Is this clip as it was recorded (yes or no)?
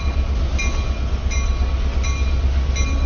yes